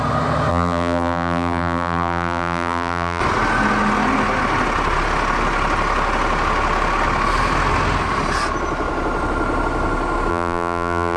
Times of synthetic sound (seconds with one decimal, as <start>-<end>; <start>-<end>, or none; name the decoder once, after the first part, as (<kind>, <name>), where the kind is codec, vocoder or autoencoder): 0.5-3.2 (vocoder, BigVGAN v2); 10.3-11.2